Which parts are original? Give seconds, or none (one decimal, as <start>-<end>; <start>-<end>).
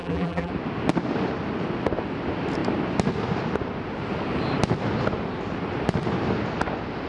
0.5-7.1